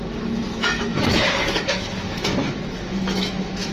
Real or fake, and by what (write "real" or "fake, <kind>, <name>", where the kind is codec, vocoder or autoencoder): fake, autoencoder, DAC-VAE